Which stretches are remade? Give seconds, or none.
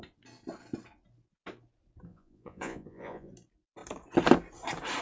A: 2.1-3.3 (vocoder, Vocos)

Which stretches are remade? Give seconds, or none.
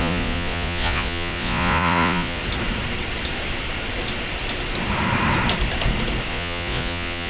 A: 0.0-2.4 (vocoder, Vocos); 6.3-7.3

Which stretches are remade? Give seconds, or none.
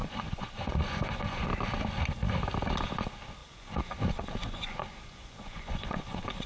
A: 0.0-1.5 (vocoder, Vocos); 3.4-6.5